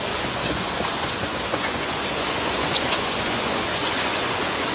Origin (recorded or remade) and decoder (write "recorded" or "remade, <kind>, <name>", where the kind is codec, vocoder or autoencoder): remade, vocoder, Vocos